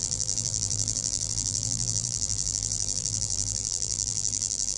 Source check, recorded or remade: remade